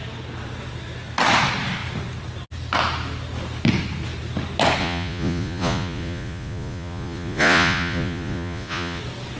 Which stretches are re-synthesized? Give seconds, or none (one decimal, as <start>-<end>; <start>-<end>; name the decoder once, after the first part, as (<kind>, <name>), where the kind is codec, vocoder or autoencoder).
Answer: 4.8-9.0 (vocoder, Vocos)